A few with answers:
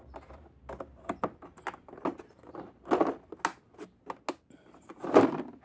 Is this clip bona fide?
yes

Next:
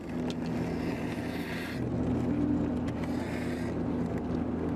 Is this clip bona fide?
yes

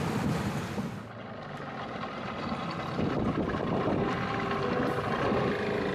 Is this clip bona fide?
yes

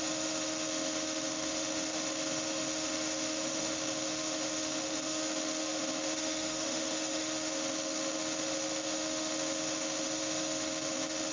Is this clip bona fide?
no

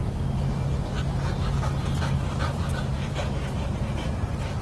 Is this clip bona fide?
yes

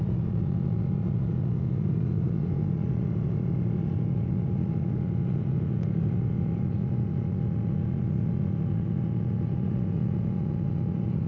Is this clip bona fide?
no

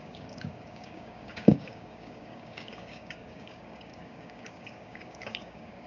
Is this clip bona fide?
no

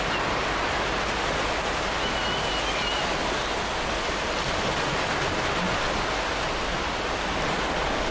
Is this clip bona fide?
yes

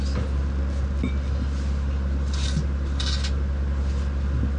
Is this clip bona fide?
yes